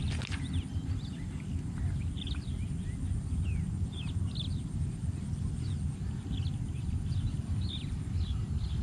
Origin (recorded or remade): recorded